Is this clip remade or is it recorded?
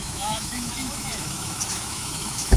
remade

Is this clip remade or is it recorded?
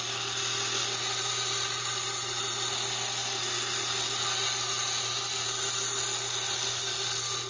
recorded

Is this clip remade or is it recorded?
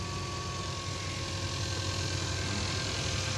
recorded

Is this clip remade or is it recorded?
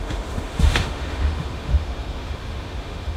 remade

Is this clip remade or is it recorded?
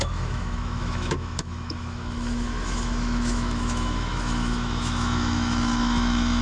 remade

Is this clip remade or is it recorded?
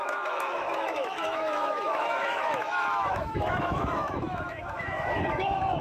remade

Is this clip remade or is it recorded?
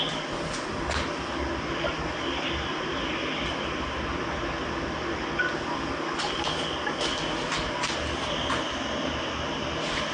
recorded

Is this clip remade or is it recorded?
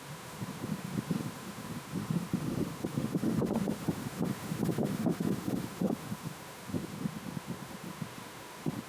remade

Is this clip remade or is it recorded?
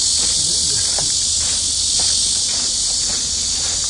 recorded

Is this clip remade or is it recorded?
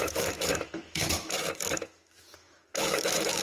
remade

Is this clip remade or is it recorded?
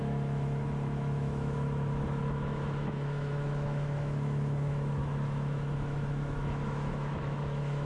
remade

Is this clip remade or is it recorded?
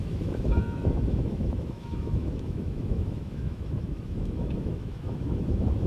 remade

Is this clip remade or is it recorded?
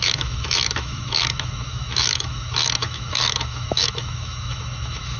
remade